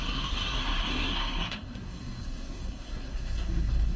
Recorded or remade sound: remade